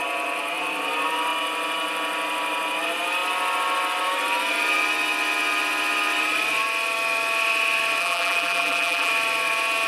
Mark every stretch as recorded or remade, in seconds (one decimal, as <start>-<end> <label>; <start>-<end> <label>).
0.0-8.0 recorded; 8.0-9.1 remade; 9.1-9.9 recorded